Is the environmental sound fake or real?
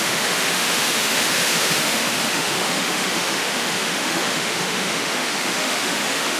fake